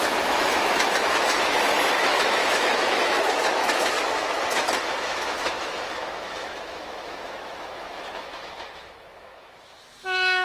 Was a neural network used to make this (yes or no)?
yes